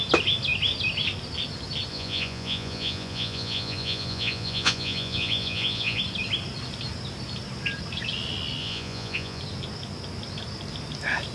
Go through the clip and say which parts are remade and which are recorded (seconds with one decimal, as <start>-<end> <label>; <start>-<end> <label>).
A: 0.0-1.9 recorded; 1.9-6.0 remade; 6.0-8.6 recorded; 8.6-9.4 remade; 9.4-11.3 recorded

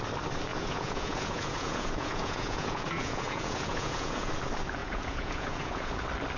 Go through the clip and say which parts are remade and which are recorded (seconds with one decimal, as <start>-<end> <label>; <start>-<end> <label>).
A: 0.0-0.5 recorded; 0.5-4.3 remade; 4.3-4.8 recorded; 4.8-5.9 remade; 5.9-6.4 recorded

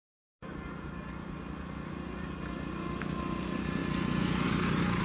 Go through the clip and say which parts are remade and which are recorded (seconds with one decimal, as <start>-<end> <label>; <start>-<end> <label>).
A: 0.0-5.0 recorded

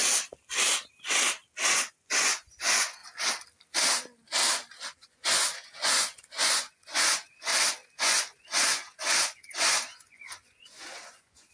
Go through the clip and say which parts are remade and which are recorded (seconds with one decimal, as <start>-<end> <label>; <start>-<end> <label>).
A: 0.0-1.9 recorded; 1.9-3.0 remade; 3.0-5.0 recorded; 5.0-7.5 remade; 7.5-8.0 recorded; 8.0-11.5 remade

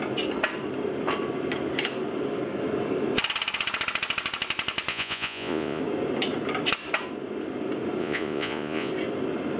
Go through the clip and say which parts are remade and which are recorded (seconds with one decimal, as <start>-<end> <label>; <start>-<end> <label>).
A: 0.0-4.9 recorded; 4.9-5.8 remade; 5.8-8.0 recorded; 8.0-8.9 remade; 8.9-9.6 recorded

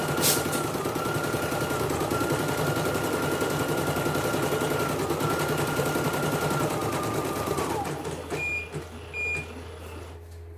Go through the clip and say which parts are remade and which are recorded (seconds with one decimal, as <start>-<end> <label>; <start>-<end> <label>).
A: 0.0-10.6 recorded

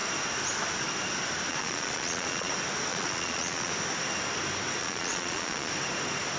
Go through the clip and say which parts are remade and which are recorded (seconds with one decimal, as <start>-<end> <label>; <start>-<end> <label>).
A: 0.0-1.5 recorded; 1.5-2.5 remade; 2.5-2.9 recorded; 2.9-3.7 remade; 3.7-4.8 recorded; 4.8-5.7 remade; 5.7-6.4 recorded